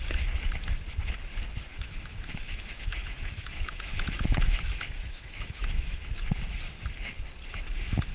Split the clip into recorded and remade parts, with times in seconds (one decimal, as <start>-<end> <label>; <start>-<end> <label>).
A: 0.0-1.7 recorded; 1.7-6.0 remade; 6.0-8.1 recorded